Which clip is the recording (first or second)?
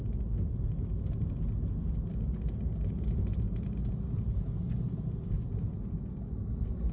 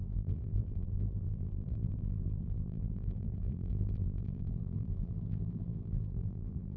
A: first